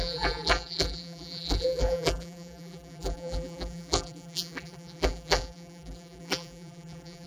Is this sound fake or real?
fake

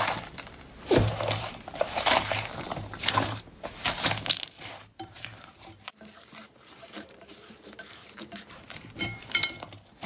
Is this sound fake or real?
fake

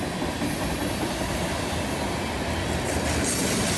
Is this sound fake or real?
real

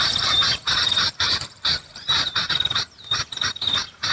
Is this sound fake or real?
fake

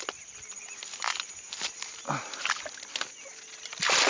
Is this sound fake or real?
real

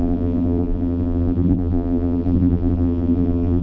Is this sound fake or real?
fake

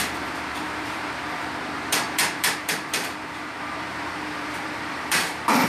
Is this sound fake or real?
fake